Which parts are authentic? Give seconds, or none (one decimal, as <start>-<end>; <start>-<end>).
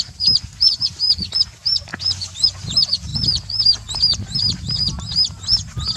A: 0.0-6.0